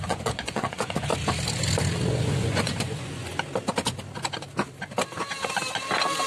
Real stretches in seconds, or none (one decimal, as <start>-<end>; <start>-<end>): 1.1-2.1; 3.3-6.3